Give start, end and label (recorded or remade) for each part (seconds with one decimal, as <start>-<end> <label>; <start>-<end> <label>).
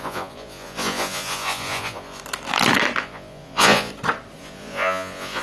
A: 0.0-2.2 remade; 2.2-3.0 recorded; 3.0-3.9 remade; 3.9-4.4 recorded; 4.4-5.4 remade